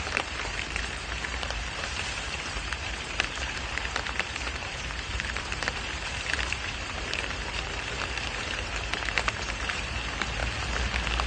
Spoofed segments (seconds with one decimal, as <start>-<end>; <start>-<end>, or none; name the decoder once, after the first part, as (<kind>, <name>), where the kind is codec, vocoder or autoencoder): 0.0-10.4 (vocoder, BigVGAN v2)